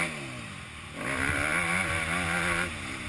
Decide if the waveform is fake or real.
real